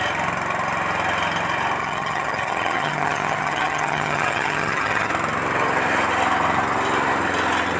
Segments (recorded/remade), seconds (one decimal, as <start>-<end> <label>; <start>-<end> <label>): 0.0-1.8 recorded; 1.8-5.1 remade; 5.1-7.8 recorded